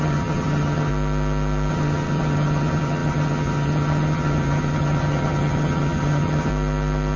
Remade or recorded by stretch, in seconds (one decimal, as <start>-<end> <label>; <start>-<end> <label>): 0.0-0.9 remade; 0.9-1.7 recorded; 1.7-6.5 remade; 6.5-7.2 recorded